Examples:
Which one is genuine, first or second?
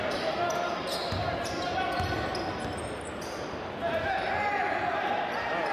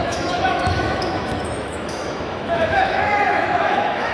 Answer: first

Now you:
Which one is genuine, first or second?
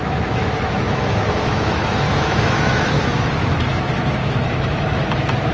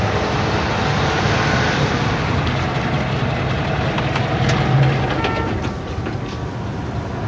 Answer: second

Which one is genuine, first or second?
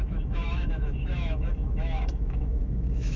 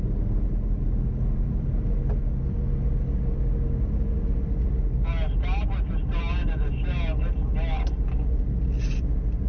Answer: second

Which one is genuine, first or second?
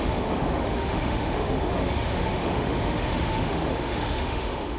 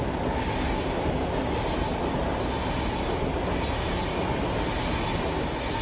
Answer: second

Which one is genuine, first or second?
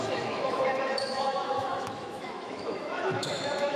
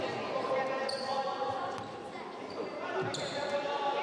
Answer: second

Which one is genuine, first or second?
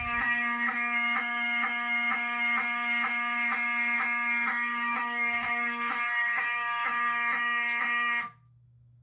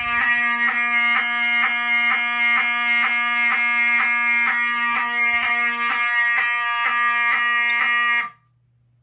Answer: second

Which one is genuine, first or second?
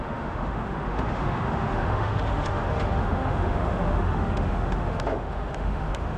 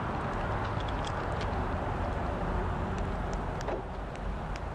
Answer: second